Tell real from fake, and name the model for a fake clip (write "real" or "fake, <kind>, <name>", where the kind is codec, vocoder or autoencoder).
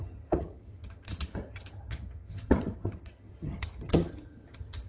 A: fake, vocoder, HiFi-GAN